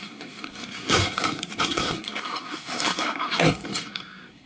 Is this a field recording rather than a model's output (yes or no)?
no